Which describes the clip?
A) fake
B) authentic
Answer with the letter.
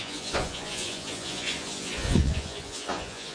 A